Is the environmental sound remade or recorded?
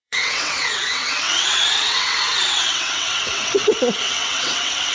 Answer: remade